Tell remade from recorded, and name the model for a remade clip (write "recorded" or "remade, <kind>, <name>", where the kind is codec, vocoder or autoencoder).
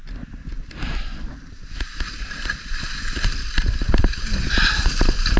recorded